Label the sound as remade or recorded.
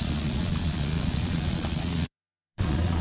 remade